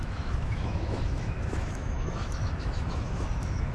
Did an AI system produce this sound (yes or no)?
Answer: yes